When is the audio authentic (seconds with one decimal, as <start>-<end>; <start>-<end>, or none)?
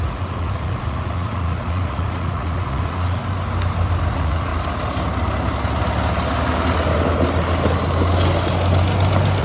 3.2-4.1; 4.5-9.4